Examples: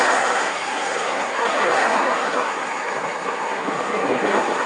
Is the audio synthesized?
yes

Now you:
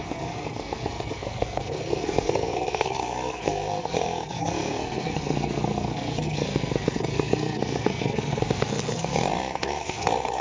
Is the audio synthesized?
yes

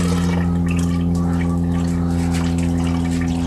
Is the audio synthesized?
no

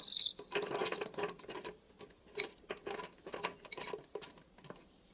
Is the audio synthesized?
no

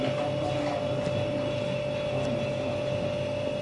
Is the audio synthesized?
no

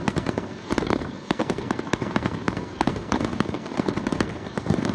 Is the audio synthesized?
yes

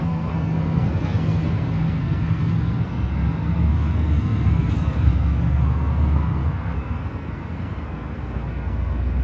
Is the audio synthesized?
yes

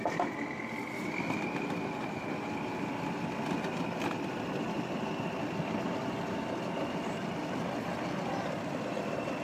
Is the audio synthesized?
no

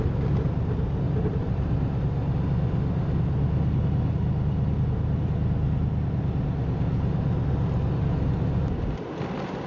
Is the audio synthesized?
no